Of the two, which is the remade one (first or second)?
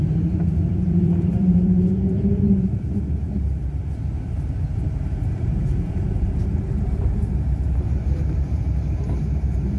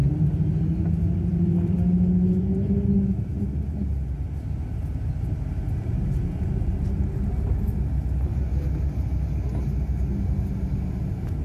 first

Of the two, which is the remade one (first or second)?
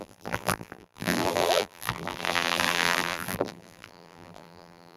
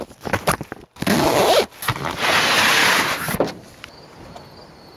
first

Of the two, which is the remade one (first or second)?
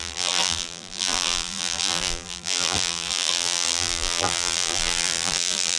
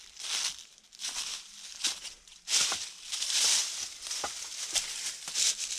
first